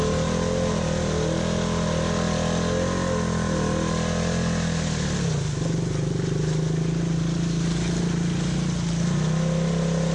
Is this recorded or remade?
recorded